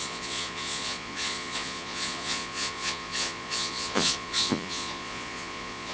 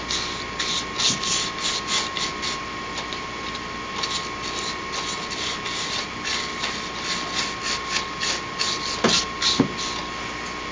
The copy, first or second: first